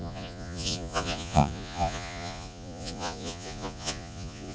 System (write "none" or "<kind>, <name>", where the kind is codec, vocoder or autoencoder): vocoder, Vocos